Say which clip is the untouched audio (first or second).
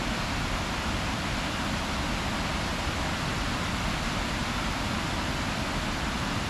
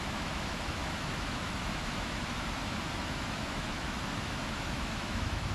first